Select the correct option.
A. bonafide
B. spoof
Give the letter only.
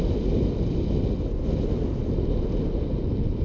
A